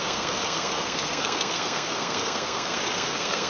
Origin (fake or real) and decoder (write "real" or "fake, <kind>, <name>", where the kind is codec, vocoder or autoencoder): fake, codec, SNAC